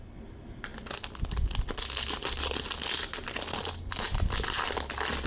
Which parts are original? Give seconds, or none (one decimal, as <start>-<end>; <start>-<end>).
0.0-5.3